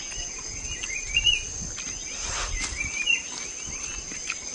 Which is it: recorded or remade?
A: recorded